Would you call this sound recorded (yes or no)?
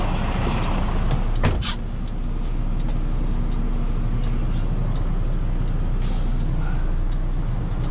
yes